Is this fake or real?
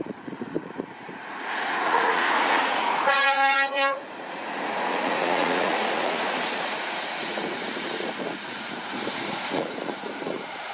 fake